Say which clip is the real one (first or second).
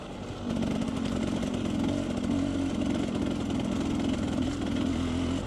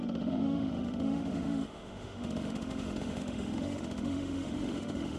first